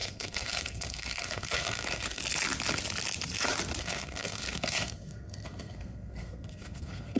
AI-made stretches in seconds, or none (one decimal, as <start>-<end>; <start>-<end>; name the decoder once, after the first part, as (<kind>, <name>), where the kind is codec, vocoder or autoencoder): 0.0-2.2 (codec, SNAC); 3.8-7.2